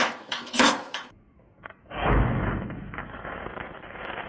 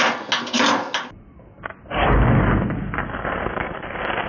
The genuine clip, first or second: second